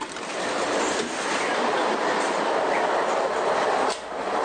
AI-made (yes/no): no